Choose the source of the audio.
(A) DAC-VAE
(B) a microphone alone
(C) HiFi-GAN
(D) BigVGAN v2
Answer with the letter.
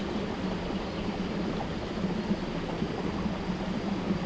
B